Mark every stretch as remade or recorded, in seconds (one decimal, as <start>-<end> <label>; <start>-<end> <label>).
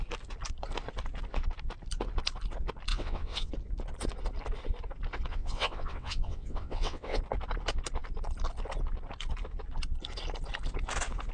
0.0-2.9 recorded; 2.9-3.5 remade; 3.5-5.3 recorded; 5.3-7.2 remade; 7.2-11.3 recorded